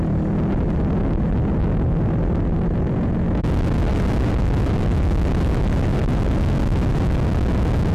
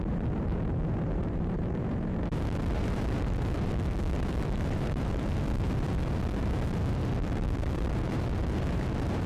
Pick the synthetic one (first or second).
second